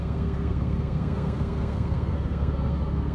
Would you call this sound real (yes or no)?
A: no